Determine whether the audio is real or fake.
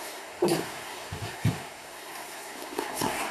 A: fake